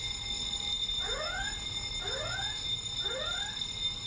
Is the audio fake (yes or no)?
no